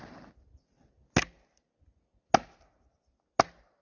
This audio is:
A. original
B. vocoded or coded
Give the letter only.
A